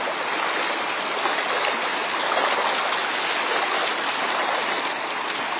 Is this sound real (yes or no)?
yes